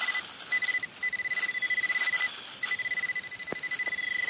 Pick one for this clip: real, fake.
real